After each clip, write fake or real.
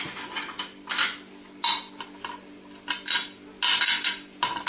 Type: real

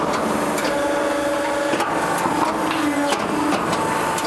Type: real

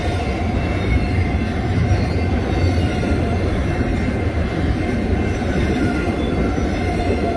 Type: real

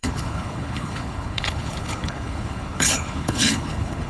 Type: fake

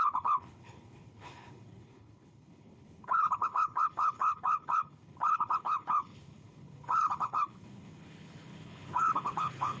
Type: fake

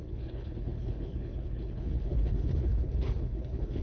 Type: fake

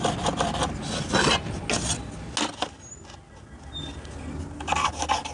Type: real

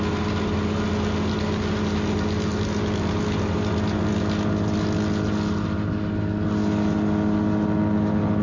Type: real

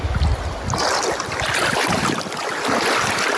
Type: real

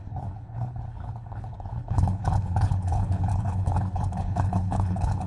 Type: fake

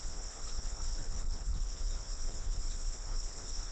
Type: fake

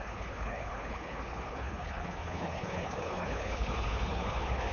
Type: fake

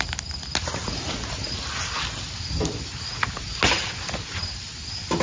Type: real